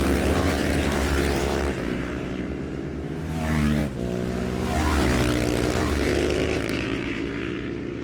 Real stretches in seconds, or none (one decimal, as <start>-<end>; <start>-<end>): 3.8-5.8